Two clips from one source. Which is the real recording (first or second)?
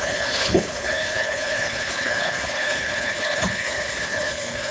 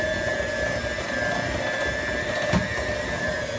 second